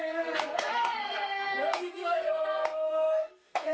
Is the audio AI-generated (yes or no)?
yes